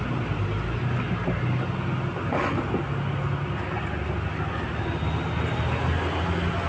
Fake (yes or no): no